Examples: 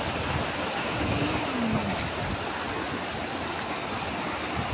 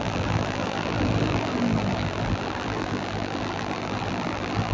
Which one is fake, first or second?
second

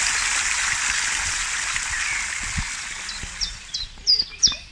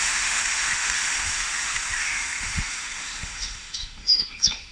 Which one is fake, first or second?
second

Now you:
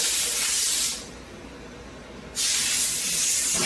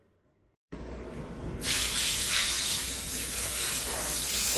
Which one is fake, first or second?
second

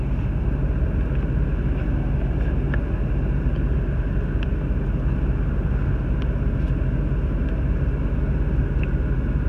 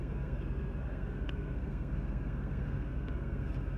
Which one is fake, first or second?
second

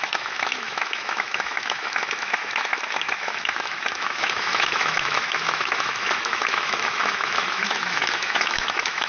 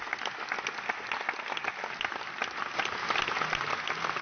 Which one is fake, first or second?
first